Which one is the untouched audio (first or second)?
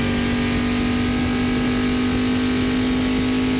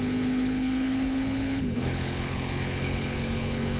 first